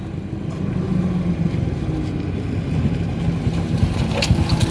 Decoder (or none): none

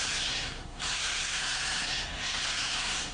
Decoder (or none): codec, SNAC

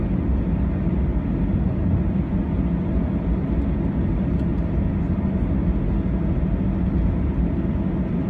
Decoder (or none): none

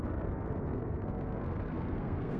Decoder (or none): codec, SNAC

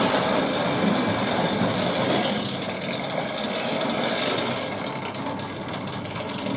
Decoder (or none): none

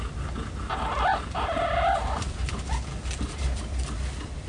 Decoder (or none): none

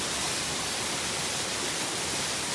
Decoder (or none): none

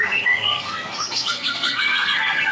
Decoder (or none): codec, SNAC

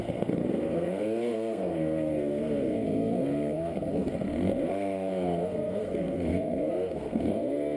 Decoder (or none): codec, SNAC